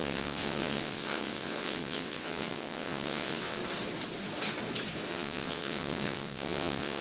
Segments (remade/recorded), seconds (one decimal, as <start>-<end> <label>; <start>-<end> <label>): 0.0-3.6 remade; 3.6-5.1 recorded; 5.1-7.0 remade